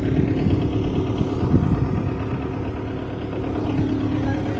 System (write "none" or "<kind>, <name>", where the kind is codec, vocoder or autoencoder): none